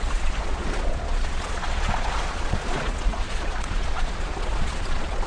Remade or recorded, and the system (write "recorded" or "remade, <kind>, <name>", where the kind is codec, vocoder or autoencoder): remade, vocoder, Vocos